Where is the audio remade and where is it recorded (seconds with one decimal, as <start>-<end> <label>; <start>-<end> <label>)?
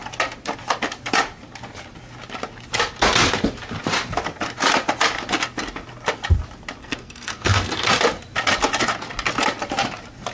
0.0-6.8 recorded; 6.8-7.9 remade; 7.9-10.3 recorded